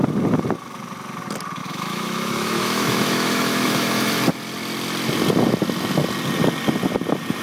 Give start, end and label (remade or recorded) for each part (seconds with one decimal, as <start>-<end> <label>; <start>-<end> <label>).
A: 0.0-1.6 recorded; 1.6-4.1 remade; 4.1-7.4 recorded